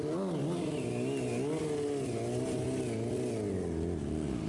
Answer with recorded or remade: recorded